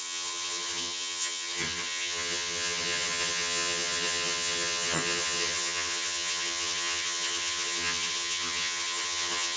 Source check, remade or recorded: remade